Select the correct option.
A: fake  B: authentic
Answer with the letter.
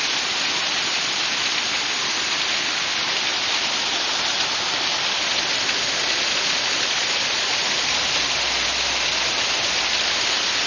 B